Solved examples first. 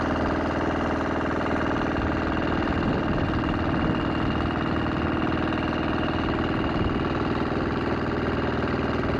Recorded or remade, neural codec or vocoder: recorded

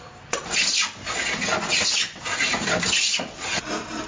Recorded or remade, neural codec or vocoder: recorded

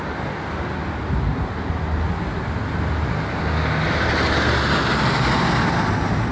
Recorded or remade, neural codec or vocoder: recorded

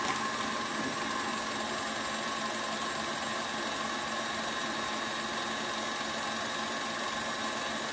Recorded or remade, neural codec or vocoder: recorded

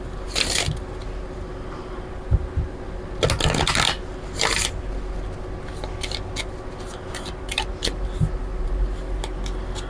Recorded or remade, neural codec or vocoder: recorded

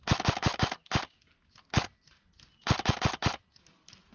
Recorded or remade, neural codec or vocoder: recorded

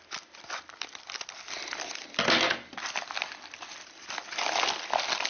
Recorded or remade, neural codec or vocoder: recorded